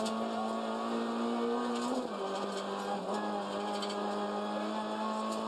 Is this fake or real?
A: real